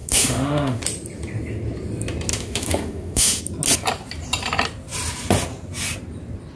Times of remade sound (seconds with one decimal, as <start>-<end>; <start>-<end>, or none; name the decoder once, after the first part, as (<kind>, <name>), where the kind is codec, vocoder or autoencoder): 0.0-0.8 (autoencoder, DAC-VAE); 2.3-3.4